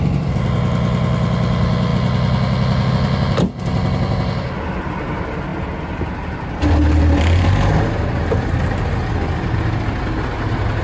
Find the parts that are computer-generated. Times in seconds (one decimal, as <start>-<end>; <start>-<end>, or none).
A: none

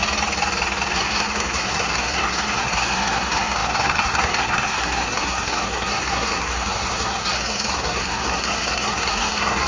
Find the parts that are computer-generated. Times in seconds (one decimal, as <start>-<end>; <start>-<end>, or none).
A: 0.9-9.7

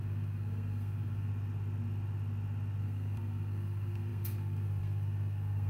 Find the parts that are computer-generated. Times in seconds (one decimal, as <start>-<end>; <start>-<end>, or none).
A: 0.0-1.3; 2.8-5.7